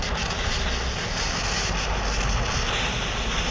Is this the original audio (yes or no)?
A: yes